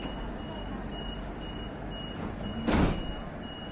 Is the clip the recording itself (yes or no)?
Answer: yes